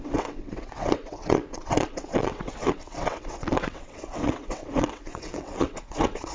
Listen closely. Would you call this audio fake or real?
fake